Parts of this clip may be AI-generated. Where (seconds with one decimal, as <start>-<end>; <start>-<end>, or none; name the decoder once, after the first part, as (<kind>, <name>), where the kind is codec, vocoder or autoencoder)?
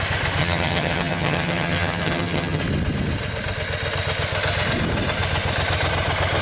0.4-2.6 (vocoder, HiFi-GAN)